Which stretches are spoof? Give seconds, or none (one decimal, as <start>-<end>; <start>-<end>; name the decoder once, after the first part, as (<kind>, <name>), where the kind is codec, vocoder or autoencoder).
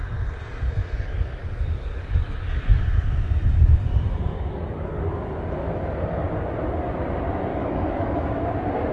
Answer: 0.8-2.8 (codec, DAC); 4.3-5.0; 7.5-8.2